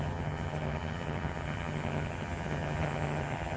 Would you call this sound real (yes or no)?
no